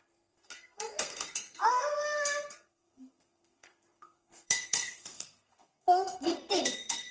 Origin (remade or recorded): remade